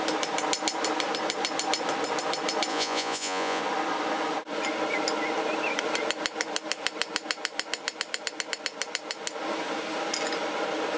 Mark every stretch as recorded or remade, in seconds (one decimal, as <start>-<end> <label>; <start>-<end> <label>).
0.0-2.7 recorded; 2.7-3.6 remade; 3.6-11.0 recorded